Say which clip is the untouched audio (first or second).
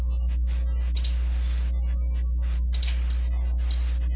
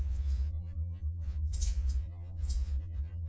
first